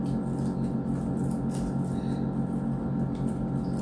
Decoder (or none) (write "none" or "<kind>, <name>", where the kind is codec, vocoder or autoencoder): none